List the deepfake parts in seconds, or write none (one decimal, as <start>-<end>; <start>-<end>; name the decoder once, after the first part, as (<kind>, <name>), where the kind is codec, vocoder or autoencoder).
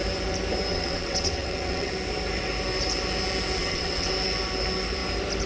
0.7-1.9 (vocoder, WaveNeXt); 3.6-4.1